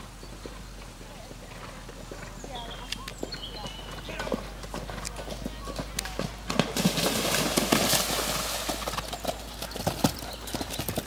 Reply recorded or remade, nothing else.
recorded